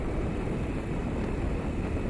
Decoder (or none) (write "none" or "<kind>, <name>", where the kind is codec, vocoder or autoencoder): none